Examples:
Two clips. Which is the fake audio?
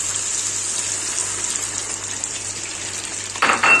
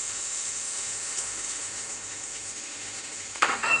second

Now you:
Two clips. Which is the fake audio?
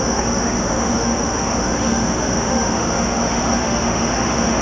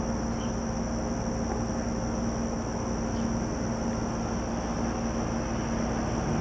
first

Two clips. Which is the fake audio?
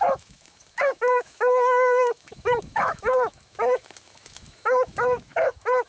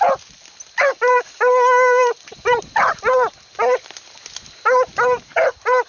first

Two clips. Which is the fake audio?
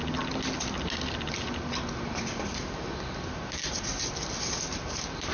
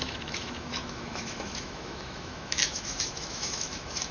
second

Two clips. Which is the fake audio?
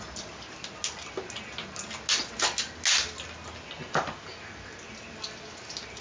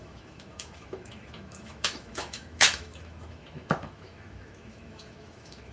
second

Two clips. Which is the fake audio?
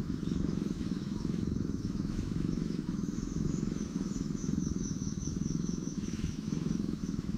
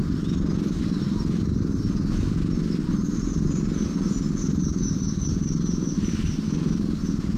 first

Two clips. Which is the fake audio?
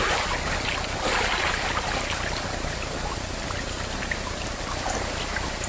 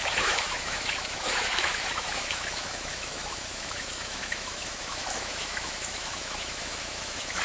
second